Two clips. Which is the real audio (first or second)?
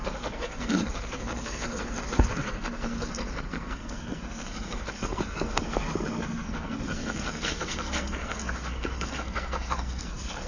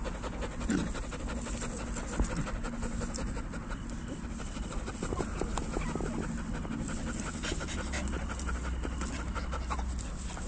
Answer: second